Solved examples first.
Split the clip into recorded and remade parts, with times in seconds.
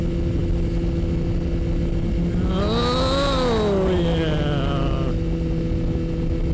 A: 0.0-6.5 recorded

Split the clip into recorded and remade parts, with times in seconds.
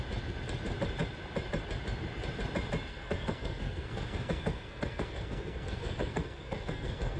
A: 0.0-2.9 recorded; 2.9-7.2 remade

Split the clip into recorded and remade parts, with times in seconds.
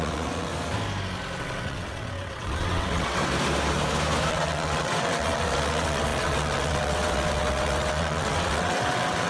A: 0.0-0.5 remade; 0.5-1.4 recorded; 1.4-3.2 remade; 3.2-4.3 recorded; 4.3-9.3 remade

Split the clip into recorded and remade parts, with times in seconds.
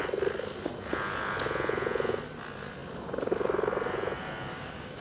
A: 0.0-4.5 recorded; 4.5-5.0 remade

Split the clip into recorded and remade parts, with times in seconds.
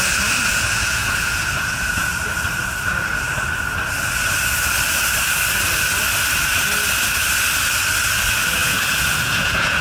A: 0.0-0.5 recorded; 0.5-2.2 remade; 2.2-8.6 recorded; 8.6-9.8 remade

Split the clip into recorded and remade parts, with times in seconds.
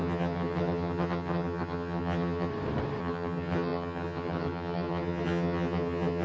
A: 0.0-2.5 remade; 2.5-3.0 recorded; 3.0-6.2 remade